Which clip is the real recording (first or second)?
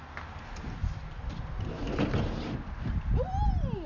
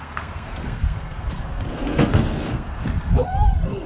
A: first